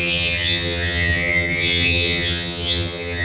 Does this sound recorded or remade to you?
remade